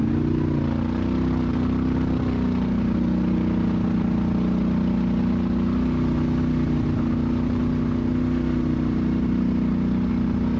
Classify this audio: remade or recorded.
recorded